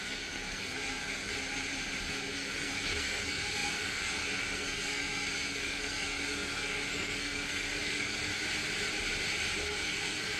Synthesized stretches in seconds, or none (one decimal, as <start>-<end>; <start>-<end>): 0.0-1.3; 2.1-8.3; 9.6-10.4